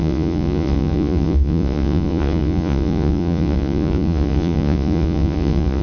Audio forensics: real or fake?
fake